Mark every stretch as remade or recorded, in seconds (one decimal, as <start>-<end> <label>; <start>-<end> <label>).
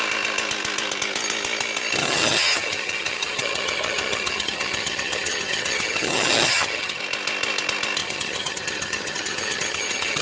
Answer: 0.0-2.0 recorded; 2.0-7.0 remade; 7.0-8.0 recorded; 8.0-10.2 remade